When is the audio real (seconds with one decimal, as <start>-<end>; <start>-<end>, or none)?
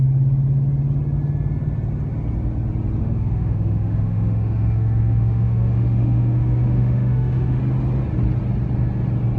0.0-3.0; 7.6-9.4